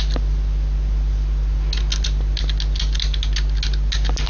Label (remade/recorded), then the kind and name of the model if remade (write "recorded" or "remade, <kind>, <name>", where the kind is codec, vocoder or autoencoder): recorded